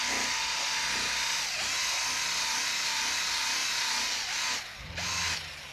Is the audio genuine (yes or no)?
yes